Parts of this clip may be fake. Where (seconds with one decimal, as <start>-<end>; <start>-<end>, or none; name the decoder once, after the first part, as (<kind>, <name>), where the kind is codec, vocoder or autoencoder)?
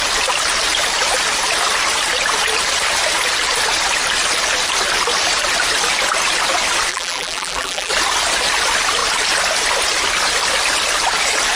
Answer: 6.9-7.9 (vocoder, BigVGAN v2)